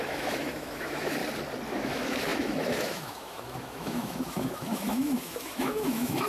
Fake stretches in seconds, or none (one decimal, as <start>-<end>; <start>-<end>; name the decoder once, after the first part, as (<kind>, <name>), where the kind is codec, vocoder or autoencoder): 0.0-1.2 (autoencoder, DAC-VAE); 1.7-6.3